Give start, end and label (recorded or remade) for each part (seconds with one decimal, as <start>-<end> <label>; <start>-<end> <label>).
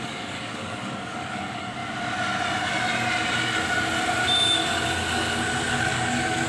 0.0-1.8 remade; 1.8-5.7 recorded; 5.7-6.5 remade